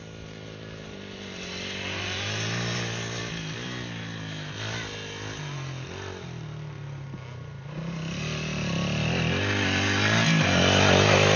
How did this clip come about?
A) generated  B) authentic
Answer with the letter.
B